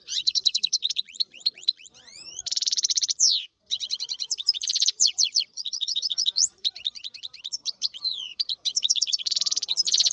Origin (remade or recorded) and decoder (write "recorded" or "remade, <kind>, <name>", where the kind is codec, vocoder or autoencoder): remade, vocoder, Vocos